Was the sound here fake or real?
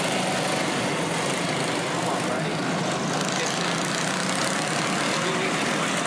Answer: real